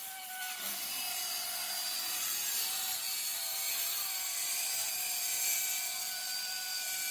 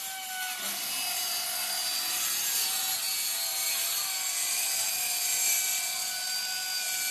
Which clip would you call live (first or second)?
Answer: second